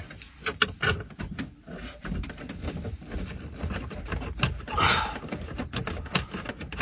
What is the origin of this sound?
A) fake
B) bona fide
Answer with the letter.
B